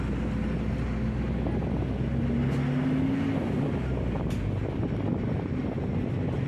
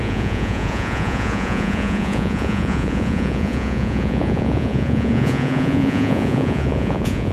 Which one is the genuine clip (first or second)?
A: first